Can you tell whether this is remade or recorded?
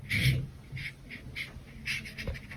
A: recorded